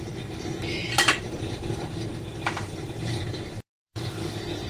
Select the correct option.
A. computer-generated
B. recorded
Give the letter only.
A